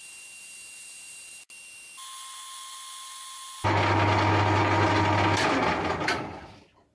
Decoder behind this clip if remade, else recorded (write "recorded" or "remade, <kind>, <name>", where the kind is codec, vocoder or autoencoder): recorded